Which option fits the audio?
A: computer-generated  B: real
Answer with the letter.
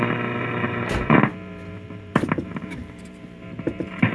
A